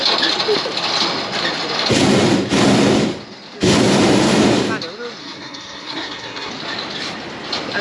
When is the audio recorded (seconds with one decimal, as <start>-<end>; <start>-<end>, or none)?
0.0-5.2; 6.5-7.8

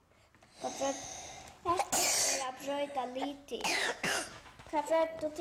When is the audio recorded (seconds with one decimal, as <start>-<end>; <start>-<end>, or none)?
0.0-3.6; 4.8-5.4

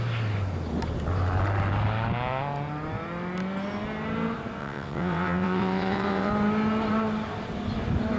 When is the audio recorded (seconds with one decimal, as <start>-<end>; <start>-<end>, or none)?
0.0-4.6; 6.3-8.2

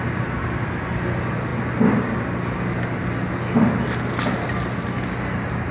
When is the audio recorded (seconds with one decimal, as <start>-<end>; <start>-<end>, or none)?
0.0-5.7